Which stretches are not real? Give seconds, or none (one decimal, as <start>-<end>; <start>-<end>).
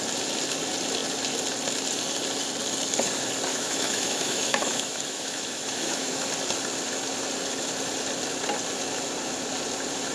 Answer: 3.5-6.3